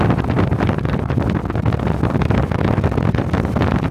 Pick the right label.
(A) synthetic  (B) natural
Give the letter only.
B